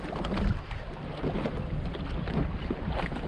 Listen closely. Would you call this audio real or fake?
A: real